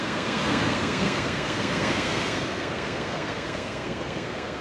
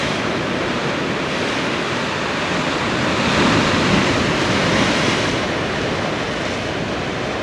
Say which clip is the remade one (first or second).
first